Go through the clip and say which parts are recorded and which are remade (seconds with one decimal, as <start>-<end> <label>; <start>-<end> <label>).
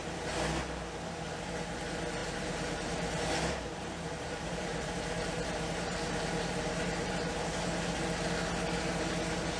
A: 0.0-2.2 recorded; 2.2-7.1 remade; 7.1-9.6 recorded